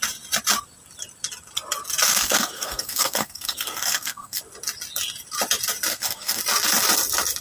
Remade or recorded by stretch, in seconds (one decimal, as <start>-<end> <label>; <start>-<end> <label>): 0.0-2.1 recorded; 2.1-4.4 remade; 4.4-5.9 recorded; 5.9-6.4 remade; 6.4-7.4 recorded